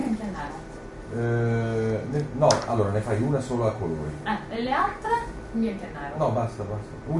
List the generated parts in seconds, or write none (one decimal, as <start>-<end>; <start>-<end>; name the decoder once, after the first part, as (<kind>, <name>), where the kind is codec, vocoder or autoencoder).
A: 0.0-0.5 (vocoder, BigVGAN v2)